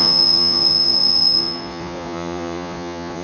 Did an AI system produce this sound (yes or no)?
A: yes